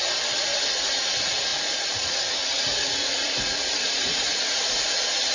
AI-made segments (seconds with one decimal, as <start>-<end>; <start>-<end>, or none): 1.5-4.7